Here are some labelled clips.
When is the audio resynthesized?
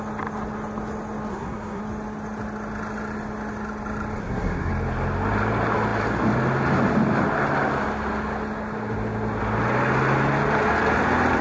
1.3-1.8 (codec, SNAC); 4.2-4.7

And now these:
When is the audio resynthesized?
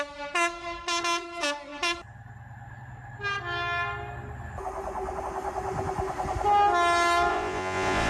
7.3-8.1 (vocoder, Vocos)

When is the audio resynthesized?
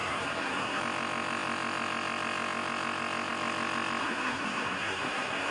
0.0-0.8 (codec, SNAC); 4.0-5.5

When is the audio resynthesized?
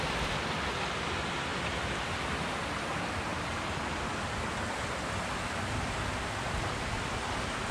1.5-2.5 (vocoder, BigVGAN v2); 3.3-5.3